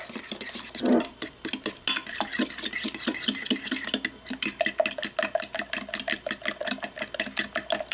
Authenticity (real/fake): real